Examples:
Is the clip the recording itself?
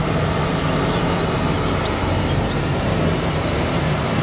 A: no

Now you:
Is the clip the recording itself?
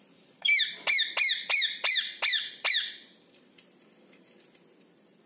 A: no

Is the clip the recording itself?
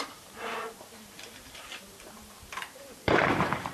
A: no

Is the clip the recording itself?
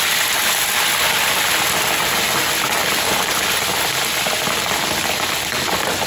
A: yes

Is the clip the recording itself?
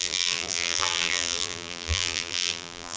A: no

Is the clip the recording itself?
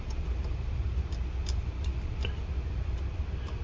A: yes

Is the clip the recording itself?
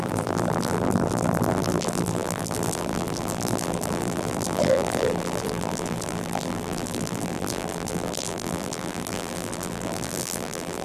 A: no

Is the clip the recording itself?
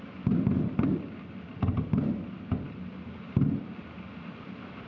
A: no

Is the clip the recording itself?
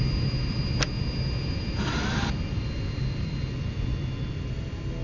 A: yes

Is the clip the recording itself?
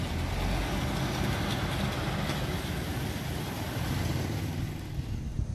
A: yes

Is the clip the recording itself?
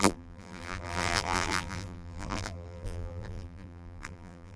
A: no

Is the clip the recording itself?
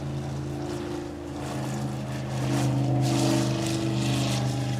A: yes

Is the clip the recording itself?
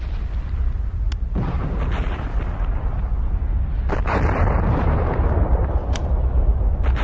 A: yes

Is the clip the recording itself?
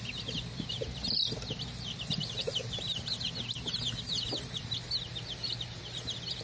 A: no